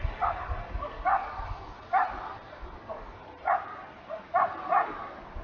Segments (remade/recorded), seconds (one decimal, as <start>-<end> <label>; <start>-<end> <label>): 0.0-5.4 recorded